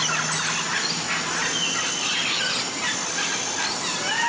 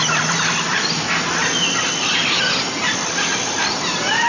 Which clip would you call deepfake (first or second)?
second